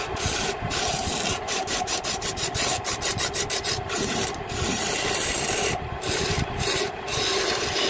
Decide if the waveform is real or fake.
fake